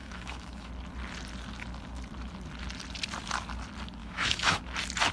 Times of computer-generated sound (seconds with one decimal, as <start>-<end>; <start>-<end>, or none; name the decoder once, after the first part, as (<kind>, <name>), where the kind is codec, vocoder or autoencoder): 0.0-0.7 (autoencoder, DAC-VAE); 4.0-4.6